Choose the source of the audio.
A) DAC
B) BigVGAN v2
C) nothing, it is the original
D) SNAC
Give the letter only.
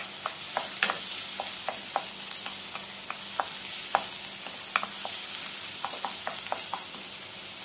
C